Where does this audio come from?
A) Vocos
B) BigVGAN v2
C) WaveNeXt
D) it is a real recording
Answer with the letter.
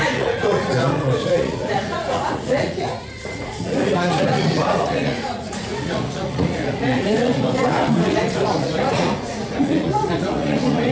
A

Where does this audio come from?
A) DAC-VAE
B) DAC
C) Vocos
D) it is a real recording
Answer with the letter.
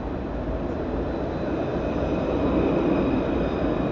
D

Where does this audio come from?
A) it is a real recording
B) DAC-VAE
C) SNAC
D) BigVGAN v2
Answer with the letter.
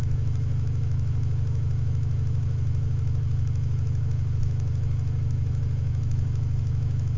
B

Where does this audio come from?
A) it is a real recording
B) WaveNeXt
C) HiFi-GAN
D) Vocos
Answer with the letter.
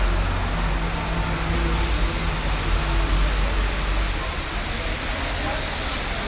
A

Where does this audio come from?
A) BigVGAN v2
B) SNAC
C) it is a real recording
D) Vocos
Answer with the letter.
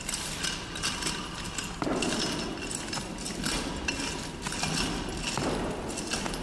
C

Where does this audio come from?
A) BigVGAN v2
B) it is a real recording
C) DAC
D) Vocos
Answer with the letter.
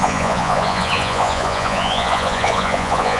D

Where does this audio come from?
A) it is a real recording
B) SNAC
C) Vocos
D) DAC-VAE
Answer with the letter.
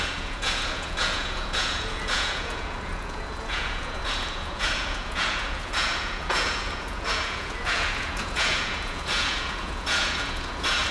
C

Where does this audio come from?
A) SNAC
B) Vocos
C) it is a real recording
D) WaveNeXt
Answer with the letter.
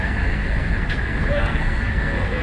A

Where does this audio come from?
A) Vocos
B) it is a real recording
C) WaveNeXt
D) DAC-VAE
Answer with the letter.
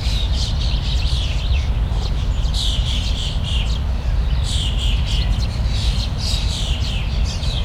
B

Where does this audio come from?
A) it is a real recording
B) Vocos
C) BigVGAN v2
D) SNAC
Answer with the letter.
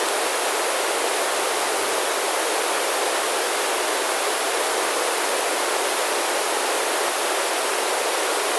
A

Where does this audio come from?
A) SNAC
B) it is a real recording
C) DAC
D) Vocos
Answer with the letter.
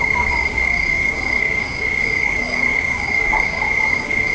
C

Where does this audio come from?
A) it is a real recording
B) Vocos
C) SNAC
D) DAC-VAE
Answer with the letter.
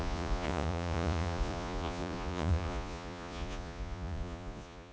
B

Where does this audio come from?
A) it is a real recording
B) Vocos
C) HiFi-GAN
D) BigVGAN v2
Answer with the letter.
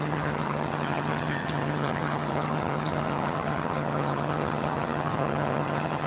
C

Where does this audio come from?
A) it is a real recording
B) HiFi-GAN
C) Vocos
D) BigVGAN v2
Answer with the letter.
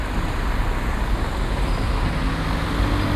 A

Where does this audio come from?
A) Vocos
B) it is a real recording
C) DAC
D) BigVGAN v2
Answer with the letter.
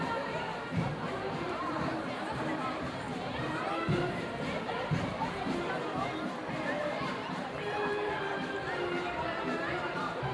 D